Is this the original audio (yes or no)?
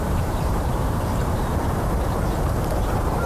no